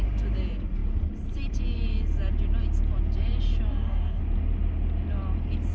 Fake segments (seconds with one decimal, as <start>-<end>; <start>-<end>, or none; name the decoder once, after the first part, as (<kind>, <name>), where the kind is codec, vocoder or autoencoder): 3.7-4.2 (codec, DAC)